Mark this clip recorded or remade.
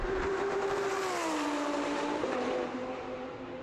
remade